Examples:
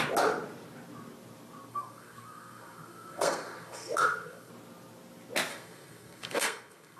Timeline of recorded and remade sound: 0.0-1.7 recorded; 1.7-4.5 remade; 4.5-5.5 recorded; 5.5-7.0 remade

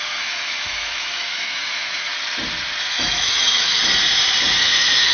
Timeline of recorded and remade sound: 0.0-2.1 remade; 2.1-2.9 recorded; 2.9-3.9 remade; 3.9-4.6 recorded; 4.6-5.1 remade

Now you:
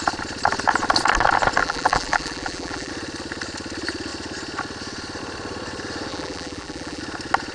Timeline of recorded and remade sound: 0.0-1.6 recorded; 1.6-2.9 remade; 2.9-6.1 recorded; 6.1-7.0 remade; 7.0-7.5 recorded

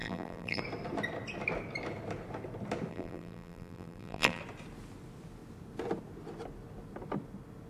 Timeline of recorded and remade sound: 0.0-0.6 remade; 0.6-2.9 recorded; 2.9-4.4 remade; 4.4-7.7 recorded

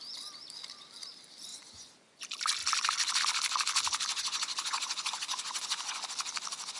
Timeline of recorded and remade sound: 0.0-1.5 recorded; 1.5-2.2 remade; 2.2-4.1 recorded; 4.1-6.0 remade; 6.0-6.8 recorded